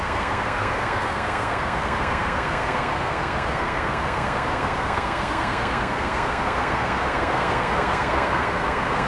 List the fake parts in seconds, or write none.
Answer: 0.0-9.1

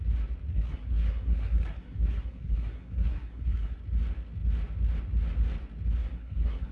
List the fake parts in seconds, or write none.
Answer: 0.5-3.8; 6.0-6.7

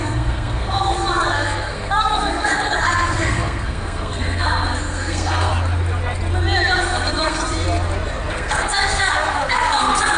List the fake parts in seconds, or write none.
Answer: 0.0-5.5; 6.8-7.4; 8.3-10.2